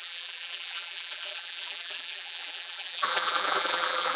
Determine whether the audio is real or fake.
fake